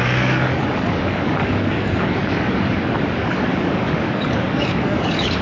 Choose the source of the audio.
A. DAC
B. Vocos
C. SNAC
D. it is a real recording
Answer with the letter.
A